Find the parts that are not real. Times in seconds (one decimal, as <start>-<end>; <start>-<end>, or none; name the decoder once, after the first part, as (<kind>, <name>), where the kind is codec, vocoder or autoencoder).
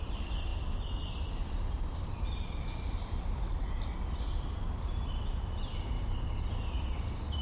none